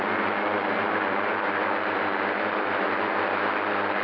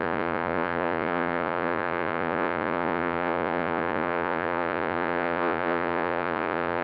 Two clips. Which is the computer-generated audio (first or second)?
second